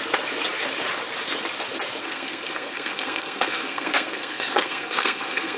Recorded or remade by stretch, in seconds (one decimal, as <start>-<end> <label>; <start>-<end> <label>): 0.0-2.0 recorded; 2.0-5.6 remade

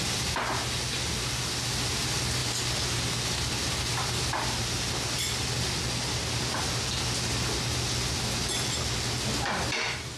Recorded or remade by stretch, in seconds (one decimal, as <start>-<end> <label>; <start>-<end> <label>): 0.0-10.2 recorded

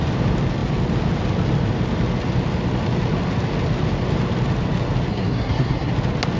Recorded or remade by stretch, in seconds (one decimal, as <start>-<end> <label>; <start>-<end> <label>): 0.0-5.1 recorded; 5.1-5.9 remade; 5.9-6.4 recorded

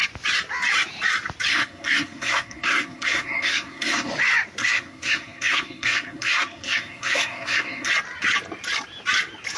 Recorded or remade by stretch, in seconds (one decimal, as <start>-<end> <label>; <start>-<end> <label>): 0.0-1.5 recorded; 1.5-4.1 remade; 4.1-4.6 recorded; 4.6-7.9 remade; 7.9-9.6 recorded

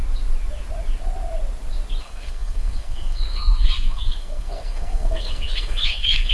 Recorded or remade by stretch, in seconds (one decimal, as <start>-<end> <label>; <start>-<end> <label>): 0.0-2.0 recorded; 2.0-6.3 remade